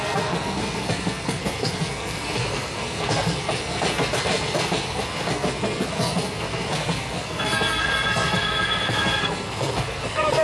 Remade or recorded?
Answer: remade